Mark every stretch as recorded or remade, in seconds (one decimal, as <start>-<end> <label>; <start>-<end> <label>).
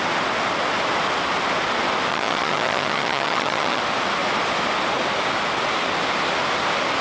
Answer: 0.0-2.1 recorded; 2.1-3.8 remade; 3.8-7.0 recorded